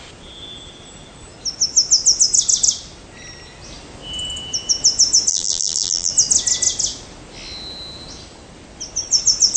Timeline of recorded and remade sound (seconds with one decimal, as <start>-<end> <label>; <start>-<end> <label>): 0.0-5.3 recorded; 5.3-6.1 remade; 6.1-9.6 recorded